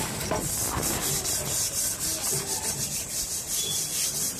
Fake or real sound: real